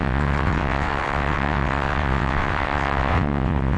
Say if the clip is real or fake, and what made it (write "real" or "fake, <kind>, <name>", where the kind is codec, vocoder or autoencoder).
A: fake, vocoder, WaveNeXt